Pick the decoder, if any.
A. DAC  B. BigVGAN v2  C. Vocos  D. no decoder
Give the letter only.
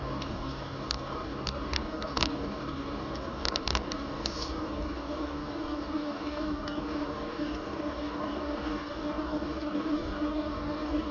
A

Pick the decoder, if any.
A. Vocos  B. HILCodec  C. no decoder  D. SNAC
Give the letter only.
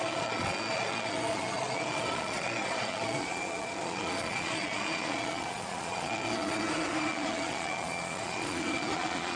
A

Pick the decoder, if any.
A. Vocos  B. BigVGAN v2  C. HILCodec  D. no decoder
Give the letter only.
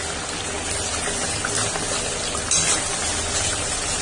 D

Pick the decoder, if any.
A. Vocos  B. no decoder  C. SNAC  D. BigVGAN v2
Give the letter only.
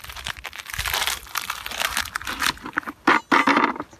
B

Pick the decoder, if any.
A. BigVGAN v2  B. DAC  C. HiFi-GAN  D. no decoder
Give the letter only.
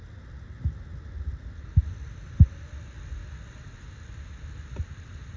D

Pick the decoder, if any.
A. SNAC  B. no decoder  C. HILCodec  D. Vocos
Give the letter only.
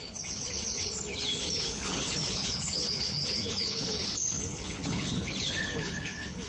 C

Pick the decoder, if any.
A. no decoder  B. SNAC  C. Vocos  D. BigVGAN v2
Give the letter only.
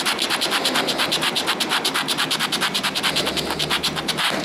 A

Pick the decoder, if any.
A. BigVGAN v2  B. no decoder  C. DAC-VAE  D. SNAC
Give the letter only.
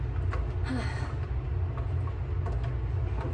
B